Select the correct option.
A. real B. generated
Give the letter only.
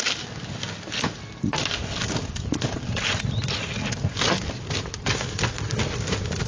A